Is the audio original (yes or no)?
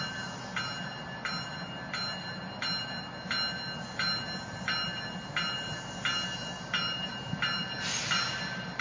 yes